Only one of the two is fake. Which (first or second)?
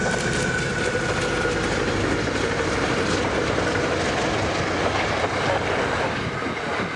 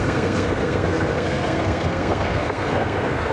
second